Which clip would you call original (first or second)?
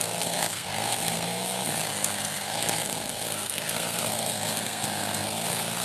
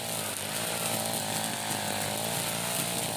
second